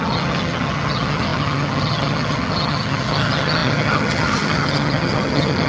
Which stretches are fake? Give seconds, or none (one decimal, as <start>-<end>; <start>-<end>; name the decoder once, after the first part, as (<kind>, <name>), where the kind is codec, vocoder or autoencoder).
0.0-5.7 (vocoder, HiFi-GAN)